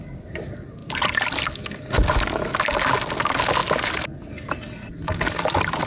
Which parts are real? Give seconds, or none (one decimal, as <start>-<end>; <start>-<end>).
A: 0.0-5.9